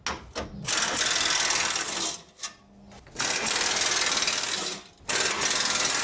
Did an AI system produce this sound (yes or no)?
no